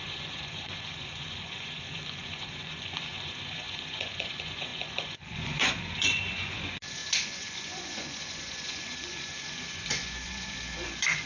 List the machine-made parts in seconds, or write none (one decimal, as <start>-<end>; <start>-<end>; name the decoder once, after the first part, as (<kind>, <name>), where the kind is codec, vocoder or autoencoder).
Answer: 0.0-11.3 (vocoder, Vocos)